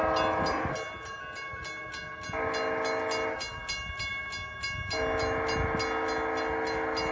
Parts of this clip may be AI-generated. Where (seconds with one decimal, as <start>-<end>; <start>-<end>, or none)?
none